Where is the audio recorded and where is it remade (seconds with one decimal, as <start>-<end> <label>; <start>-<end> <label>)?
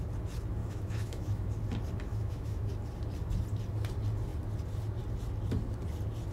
0.0-0.6 recorded; 0.6-1.5 remade; 1.5-2.1 recorded; 2.1-2.7 remade; 2.7-6.3 recorded